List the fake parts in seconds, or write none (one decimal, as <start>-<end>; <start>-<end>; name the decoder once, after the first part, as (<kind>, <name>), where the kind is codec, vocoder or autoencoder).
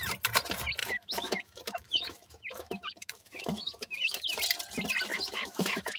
0.8-4.4 (autoencoder, DAC-VAE); 5.1-6.0